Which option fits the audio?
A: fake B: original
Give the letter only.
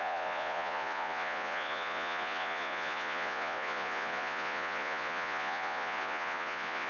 A